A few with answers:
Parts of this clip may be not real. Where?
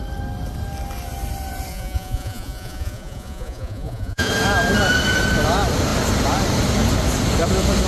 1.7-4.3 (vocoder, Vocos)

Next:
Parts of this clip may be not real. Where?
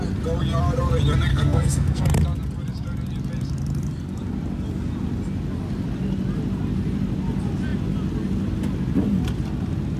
1.3-2.0 (codec, SNAC)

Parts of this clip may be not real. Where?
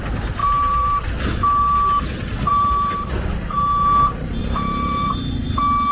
0.4-1.2 (vocoder, BigVGAN v2); 2.5-3.1; 4.4-5.1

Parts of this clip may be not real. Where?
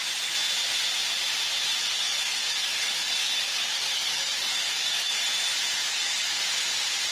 1.8-5.2 (codec, DAC); 5.9-6.4